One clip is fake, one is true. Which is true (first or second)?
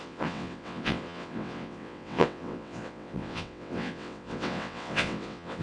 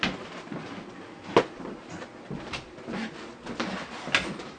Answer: second